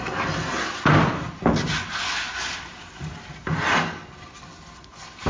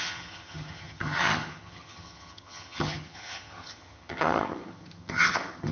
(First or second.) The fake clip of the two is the second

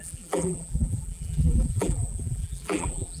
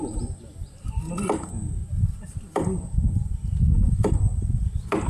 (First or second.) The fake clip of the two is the first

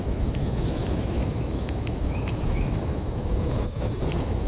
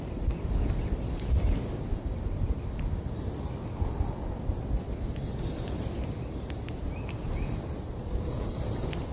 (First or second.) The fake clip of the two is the first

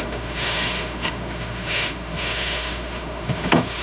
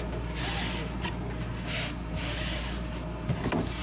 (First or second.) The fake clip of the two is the first